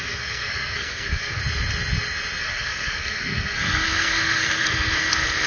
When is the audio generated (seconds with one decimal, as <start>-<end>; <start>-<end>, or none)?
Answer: 0.0-1.4; 2.4-5.5